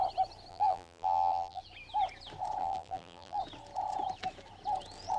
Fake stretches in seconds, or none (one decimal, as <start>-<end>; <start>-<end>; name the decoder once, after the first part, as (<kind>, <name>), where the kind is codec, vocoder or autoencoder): 0.5-1.6 (vocoder, BigVGAN v2); 2.6-3.4